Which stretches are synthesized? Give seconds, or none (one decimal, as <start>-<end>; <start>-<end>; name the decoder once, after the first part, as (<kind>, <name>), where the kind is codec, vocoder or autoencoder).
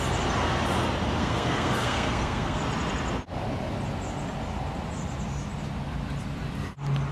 1.2-2.6 (codec, SNAC)